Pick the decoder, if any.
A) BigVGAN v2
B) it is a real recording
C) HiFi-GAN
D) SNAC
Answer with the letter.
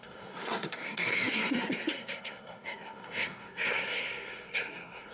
D